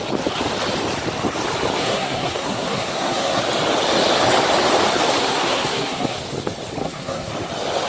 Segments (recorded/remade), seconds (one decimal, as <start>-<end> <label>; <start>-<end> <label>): 0.0-1.8 recorded; 1.8-3.4 remade; 3.4-5.2 recorded; 5.2-6.2 remade; 6.2-6.8 recorded; 6.8-7.3 remade; 7.3-7.9 recorded